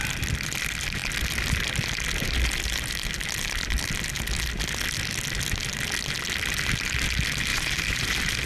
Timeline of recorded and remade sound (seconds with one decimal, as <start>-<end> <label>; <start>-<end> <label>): 0.0-7.5 recorded; 7.5-8.5 remade

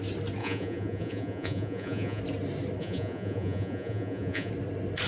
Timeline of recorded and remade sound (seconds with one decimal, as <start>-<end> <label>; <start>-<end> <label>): 0.0-0.4 recorded; 0.4-2.2 remade; 2.2-2.8 recorded; 2.8-4.5 remade; 4.5-5.1 recorded

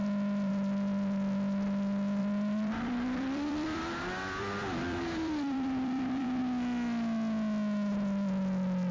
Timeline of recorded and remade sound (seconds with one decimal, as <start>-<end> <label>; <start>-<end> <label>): 0.0-0.5 remade; 0.5-2.2 recorded; 2.2-6.4 remade; 6.4-8.9 recorded

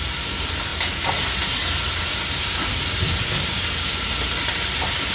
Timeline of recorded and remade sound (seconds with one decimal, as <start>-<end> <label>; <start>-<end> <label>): 0.0-5.1 recorded

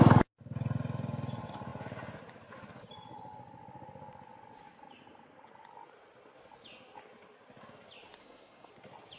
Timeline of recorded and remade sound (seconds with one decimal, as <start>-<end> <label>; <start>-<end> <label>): 0.0-8.2 recorded; 8.2-8.7 remade; 8.7-9.2 recorded

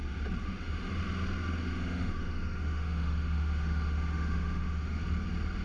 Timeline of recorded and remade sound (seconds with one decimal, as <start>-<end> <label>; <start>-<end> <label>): 0.0-0.4 recorded; 0.4-0.9 remade; 0.9-1.6 recorded; 1.6-5.0 remade; 5.0-5.6 recorded